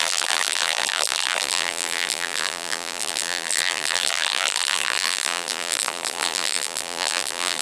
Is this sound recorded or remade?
remade